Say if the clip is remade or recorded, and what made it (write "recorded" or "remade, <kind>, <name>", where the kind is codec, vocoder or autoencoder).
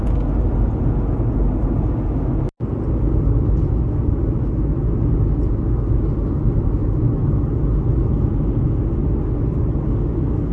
recorded